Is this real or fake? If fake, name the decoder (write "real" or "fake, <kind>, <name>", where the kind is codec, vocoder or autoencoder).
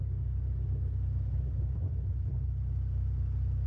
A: real